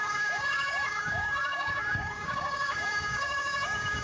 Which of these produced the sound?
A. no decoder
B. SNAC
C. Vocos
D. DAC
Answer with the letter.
D